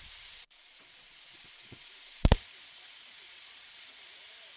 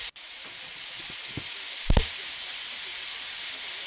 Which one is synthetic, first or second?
first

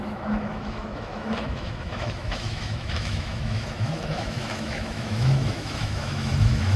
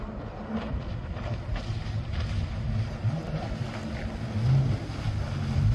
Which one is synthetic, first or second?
first